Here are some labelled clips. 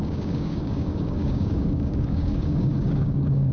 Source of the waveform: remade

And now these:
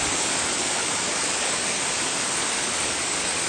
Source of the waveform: remade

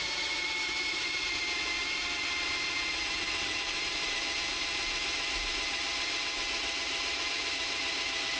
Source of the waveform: recorded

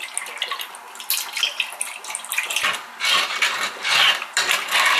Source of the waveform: recorded